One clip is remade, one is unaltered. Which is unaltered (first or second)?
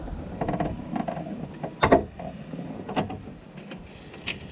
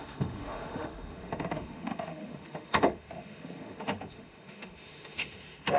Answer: first